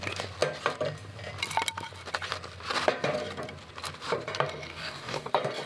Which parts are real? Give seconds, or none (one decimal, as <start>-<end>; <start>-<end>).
0.0-4.7; 5.3-5.7